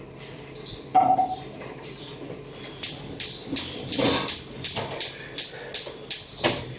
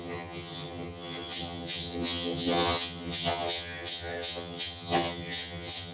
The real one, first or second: first